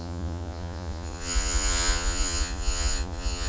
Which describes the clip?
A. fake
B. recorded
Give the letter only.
A